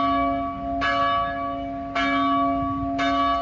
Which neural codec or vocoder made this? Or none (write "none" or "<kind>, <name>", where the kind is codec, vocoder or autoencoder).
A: none